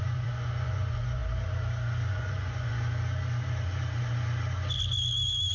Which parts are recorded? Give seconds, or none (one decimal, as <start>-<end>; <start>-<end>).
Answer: 1.2-2.1; 2.7-5.5